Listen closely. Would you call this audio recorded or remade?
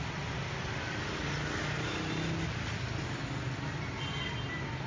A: recorded